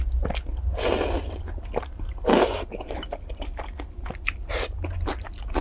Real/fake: real